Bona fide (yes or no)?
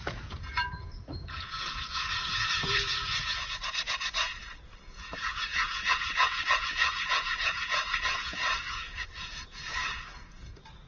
no